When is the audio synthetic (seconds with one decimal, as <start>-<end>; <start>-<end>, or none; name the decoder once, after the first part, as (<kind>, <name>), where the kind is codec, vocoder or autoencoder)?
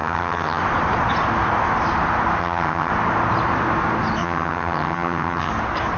0.0-0.6 (vocoder, HiFi-GAN); 2.4-2.9; 4.2-5.5